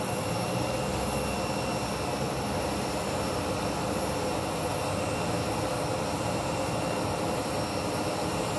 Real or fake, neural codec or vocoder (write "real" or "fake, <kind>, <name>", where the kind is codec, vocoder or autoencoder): real